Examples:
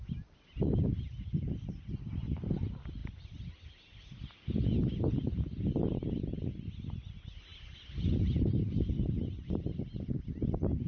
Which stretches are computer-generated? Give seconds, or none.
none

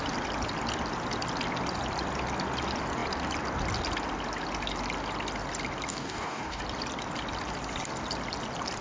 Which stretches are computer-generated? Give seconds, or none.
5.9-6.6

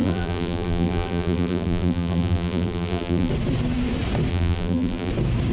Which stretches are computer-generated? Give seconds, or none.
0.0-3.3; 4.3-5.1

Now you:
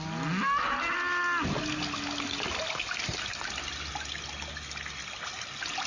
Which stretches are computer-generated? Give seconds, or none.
none